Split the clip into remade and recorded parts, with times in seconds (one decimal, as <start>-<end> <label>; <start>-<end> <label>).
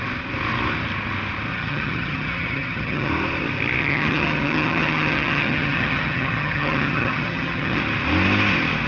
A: 0.0-1.5 recorded; 1.5-3.1 remade; 3.1-3.8 recorded; 3.8-7.8 remade; 7.8-8.9 recorded